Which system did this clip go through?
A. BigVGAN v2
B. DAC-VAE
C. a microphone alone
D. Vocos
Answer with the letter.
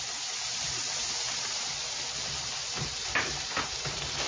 A